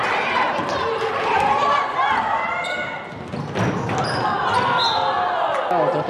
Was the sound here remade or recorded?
recorded